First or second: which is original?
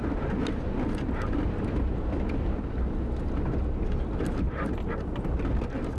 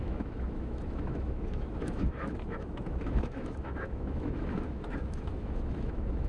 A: first